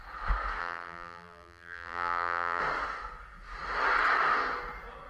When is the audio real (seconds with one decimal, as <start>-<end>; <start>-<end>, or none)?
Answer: 0.0-0.6; 2.6-5.1